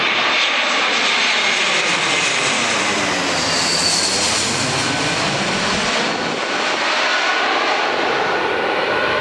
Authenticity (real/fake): real